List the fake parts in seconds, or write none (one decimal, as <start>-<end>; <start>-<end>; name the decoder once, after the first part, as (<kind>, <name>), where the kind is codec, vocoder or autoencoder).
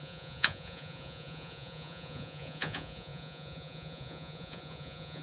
0.0-5.2 (vocoder, Vocos)